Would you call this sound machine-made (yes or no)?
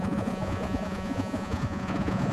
yes